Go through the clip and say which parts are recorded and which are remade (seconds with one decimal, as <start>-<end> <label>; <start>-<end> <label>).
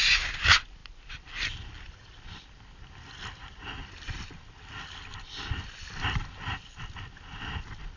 0.0-8.0 recorded